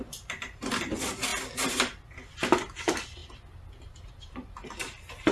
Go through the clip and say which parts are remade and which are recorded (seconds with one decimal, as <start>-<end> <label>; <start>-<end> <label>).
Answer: 0.0-5.3 recorded